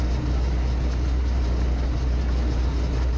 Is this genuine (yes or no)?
yes